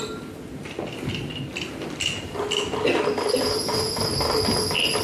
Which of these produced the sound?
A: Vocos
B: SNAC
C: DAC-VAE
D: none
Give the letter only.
D